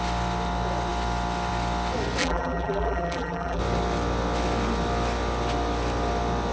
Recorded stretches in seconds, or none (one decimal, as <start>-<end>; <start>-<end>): 0.0-2.2; 3.6-6.5